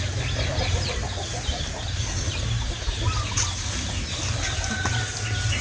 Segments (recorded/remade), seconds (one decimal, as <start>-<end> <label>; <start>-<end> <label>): 0.0-5.6 recorded